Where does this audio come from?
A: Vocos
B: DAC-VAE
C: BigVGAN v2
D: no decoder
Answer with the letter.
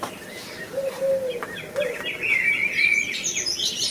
D